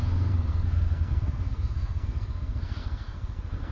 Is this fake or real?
fake